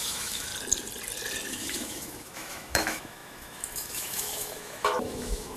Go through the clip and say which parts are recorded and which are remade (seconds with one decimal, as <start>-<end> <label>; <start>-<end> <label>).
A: 0.0-0.5 remade; 0.5-1.5 recorded; 1.5-5.6 remade